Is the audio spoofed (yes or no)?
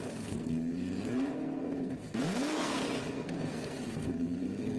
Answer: yes